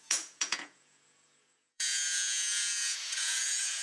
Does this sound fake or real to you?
fake